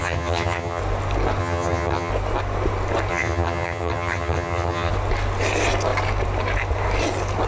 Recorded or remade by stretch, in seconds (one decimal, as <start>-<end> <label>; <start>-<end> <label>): 0.0-0.8 remade; 0.8-1.4 recorded; 1.4-2.1 remade; 2.1-3.1 recorded; 3.1-4.9 remade; 4.9-7.5 recorded

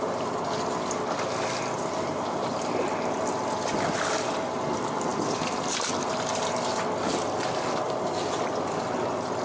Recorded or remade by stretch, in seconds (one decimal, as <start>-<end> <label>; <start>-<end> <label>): 0.0-9.4 recorded